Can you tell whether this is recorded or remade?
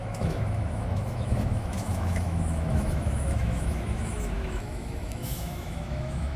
remade